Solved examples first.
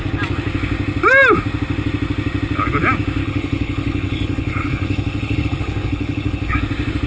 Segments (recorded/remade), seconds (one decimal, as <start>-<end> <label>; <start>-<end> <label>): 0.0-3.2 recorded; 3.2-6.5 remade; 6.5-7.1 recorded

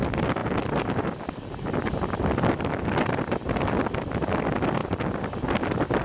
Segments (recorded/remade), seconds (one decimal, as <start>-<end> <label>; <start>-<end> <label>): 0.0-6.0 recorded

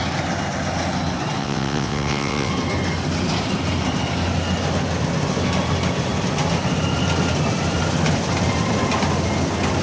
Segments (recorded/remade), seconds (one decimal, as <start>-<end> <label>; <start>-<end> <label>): 0.0-1.4 recorded; 1.4-2.5 remade; 2.5-9.8 recorded

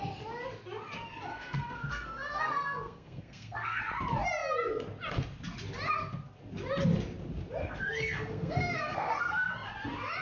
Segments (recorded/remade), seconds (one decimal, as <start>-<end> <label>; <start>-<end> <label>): 0.0-1.3 recorded; 1.3-3.8 remade; 3.8-7.6 recorded; 7.6-9.5 remade; 9.5-10.2 recorded